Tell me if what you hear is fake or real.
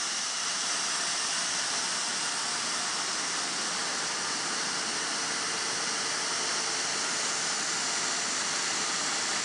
real